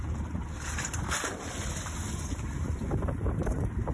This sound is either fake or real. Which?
fake